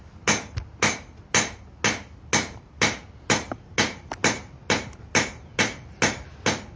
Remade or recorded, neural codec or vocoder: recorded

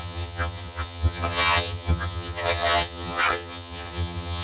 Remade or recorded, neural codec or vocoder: remade, vocoder, HiFi-GAN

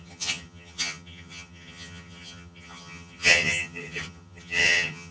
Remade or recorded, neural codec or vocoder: remade, vocoder, HiFi-GAN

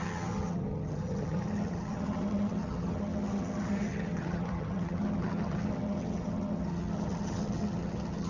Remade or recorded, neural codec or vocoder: remade, vocoder, HiFi-GAN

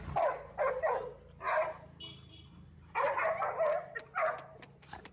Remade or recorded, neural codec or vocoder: recorded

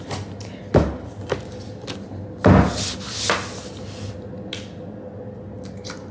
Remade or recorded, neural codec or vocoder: recorded